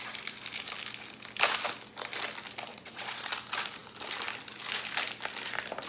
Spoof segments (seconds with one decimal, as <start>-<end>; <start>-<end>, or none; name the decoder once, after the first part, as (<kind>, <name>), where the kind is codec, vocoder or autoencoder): 2.7-3.3 (vocoder, Vocos)

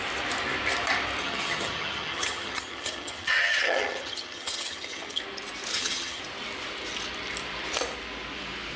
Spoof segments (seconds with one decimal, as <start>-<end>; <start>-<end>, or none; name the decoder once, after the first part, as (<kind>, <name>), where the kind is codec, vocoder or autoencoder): 1.2-5.2 (vocoder, HiFi-GAN); 5.7-6.2

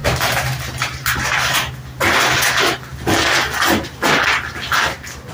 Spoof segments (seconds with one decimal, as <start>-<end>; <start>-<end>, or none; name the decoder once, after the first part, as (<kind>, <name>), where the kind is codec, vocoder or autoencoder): 0.0-1.5 (vocoder, BigVGAN v2)

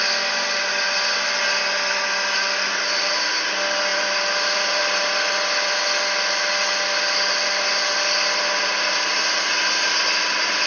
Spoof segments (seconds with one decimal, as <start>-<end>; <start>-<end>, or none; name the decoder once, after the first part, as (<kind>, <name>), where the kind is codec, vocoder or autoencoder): 3.9-4.8 (vocoder, BigVGAN v2)

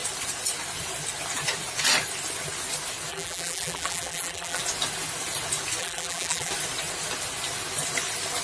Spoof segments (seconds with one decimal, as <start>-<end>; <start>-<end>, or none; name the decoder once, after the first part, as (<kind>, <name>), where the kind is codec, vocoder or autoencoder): 3.1-4.6 (vocoder, BigVGAN v2); 5.8-6.5

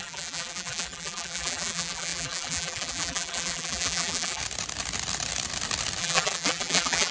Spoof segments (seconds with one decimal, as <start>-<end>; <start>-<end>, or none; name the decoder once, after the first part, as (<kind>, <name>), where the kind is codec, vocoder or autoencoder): 0.0-4.4 (vocoder, BigVGAN v2); 6.0-7.1

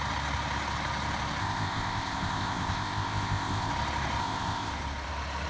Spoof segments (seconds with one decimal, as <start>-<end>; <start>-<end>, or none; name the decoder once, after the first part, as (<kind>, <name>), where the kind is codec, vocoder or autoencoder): 1.4-3.7 (codec, ZipCodec); 4.2-4.7